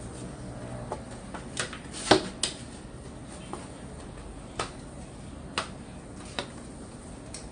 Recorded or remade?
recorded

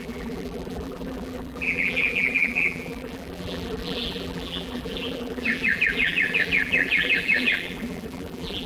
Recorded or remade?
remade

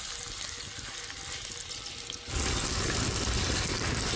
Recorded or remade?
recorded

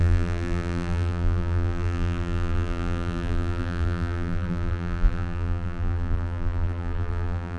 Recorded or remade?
remade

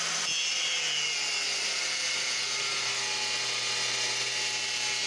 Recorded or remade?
recorded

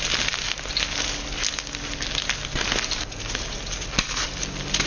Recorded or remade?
recorded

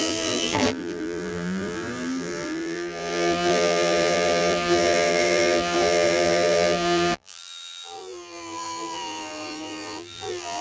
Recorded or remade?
remade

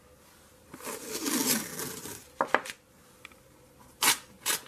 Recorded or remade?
recorded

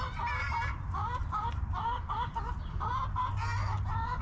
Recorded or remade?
recorded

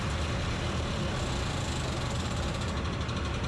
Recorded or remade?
recorded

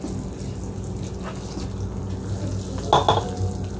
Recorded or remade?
recorded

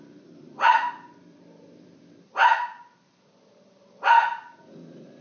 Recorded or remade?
recorded